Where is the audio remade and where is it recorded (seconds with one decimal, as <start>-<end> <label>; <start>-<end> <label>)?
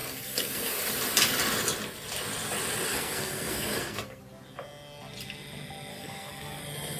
0.0-0.8 remade; 0.8-2.9 recorded; 2.9-4.2 remade; 4.2-5.9 recorded; 5.9-6.6 remade; 6.6-7.0 recorded